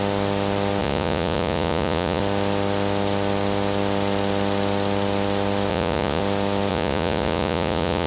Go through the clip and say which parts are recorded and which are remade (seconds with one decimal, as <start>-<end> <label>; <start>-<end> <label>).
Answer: 0.0-0.8 recorded; 0.8-2.2 remade; 2.2-5.7 recorded; 5.7-6.2 remade; 6.2-6.7 recorded; 6.7-8.1 remade